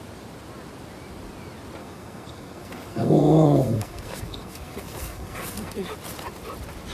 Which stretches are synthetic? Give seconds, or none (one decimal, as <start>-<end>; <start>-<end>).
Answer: 1.8-5.9